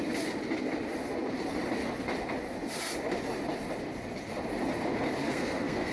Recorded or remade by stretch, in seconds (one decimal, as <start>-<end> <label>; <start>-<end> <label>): 0.0-5.2 recorded; 5.2-5.9 remade